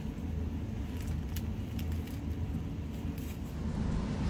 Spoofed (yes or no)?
no